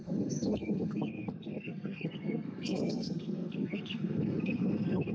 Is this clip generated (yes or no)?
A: yes